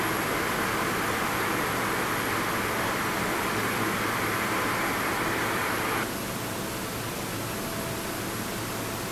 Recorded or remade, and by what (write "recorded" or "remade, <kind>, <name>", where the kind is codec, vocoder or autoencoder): recorded